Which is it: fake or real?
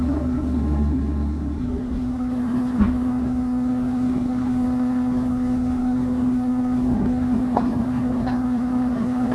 fake